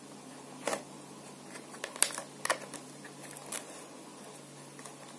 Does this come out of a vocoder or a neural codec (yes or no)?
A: no